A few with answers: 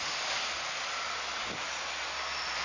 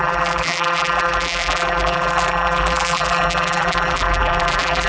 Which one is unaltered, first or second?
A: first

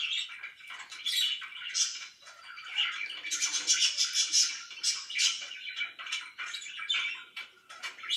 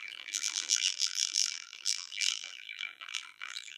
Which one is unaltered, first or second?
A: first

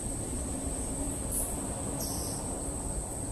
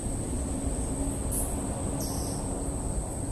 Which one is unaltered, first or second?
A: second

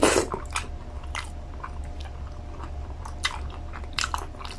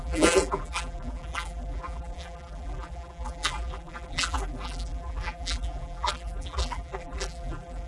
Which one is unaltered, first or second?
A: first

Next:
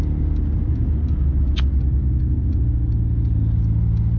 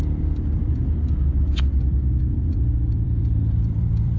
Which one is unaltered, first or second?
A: first